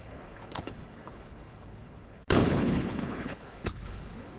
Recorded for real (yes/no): no